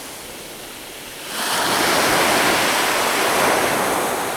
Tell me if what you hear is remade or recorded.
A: recorded